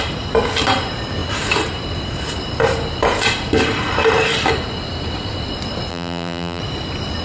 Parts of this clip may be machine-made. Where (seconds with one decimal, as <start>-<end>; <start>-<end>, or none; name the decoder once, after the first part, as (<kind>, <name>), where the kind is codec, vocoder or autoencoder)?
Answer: 5.9-6.6 (vocoder, BigVGAN v2)